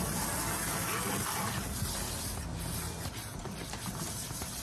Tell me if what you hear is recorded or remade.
recorded